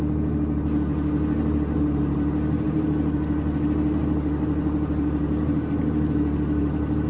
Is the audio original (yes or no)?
yes